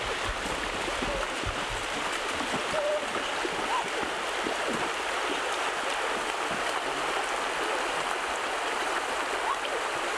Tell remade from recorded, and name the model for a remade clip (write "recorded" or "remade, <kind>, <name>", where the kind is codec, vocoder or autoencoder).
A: recorded